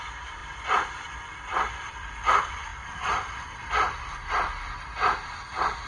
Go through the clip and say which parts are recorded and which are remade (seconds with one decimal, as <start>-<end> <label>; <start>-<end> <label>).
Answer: 0.0-5.9 remade